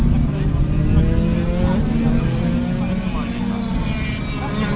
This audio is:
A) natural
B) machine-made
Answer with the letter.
A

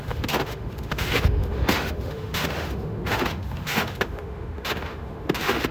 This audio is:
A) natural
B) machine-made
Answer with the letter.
B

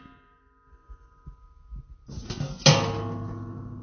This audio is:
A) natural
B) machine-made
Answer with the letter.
A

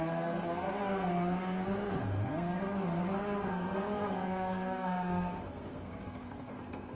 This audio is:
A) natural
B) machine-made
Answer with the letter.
B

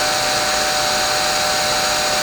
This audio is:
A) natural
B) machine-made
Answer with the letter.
A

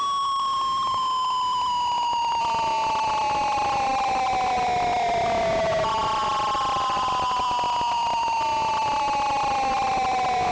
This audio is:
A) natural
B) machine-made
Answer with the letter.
A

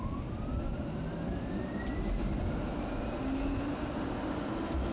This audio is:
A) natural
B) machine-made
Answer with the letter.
A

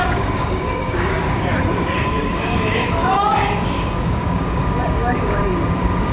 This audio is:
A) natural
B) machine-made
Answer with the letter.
B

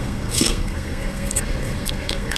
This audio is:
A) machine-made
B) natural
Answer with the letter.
A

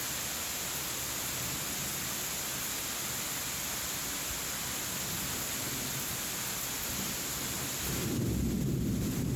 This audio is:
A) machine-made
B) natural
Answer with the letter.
B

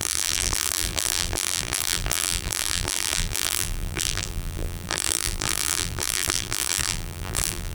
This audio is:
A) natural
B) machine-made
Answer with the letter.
B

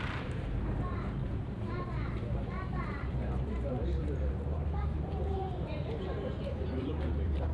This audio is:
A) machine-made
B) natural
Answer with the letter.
A